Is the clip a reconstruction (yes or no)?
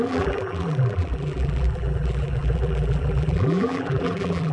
yes